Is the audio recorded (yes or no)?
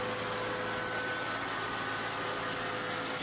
yes